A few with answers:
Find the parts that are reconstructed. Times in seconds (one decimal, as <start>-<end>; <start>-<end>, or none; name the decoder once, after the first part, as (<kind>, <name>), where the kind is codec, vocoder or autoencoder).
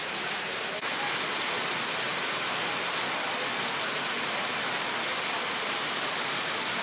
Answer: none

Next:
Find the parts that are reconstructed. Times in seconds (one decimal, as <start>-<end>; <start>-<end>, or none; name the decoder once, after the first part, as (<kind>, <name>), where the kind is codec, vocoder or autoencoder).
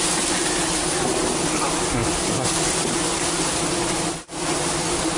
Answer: none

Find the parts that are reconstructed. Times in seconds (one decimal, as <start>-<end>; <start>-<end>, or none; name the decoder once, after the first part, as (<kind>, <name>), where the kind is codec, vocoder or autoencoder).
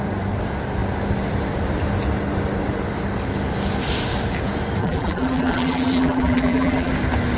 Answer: 4.8-6.9 (vocoder, BigVGAN v2)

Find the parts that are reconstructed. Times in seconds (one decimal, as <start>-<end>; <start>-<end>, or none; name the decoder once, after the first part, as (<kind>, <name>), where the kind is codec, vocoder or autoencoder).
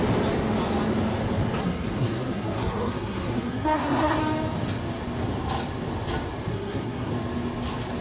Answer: 1.6-4.2 (codec, SNAC); 6.5-7.1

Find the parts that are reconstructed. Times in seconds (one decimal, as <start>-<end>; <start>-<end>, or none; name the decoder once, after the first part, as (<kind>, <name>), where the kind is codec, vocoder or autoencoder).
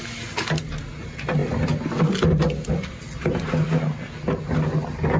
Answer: none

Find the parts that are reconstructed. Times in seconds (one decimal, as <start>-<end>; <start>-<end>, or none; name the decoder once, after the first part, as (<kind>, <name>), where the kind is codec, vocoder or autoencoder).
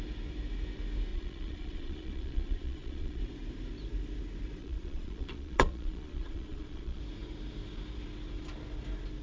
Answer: 1.1-3.2 (vocoder, Vocos); 4.6-7.0